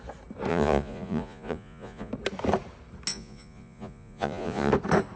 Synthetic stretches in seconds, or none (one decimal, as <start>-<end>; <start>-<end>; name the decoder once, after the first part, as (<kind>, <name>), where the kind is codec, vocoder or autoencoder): 0.5-2.1 (vocoder, Vocos); 3.1-4.7